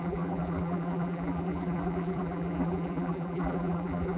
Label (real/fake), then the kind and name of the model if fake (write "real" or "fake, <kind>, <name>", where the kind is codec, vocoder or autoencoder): fake, vocoder, BigVGAN v2